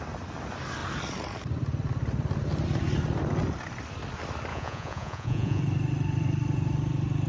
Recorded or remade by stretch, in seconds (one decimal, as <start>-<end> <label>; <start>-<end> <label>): 0.0-4.5 recorded; 4.5-5.6 remade; 5.6-7.3 recorded